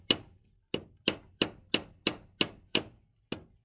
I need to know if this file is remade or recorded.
recorded